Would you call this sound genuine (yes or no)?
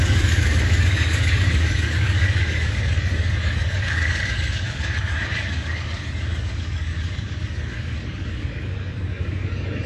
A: no